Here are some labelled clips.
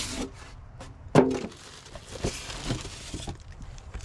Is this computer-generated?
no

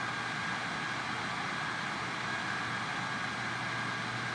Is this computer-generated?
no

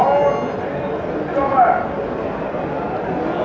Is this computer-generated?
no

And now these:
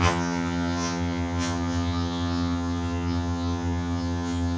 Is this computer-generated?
yes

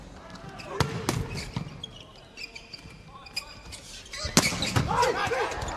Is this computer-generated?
no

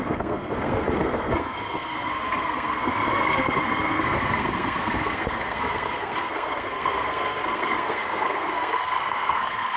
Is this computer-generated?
yes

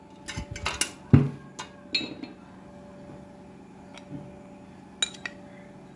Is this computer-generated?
no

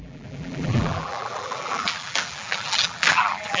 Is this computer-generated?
yes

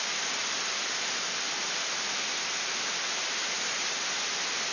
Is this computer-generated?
no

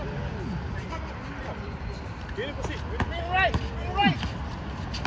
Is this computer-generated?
no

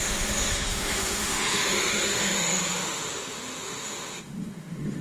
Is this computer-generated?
yes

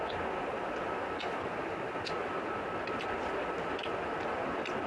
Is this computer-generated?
no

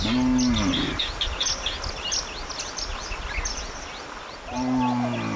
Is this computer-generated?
no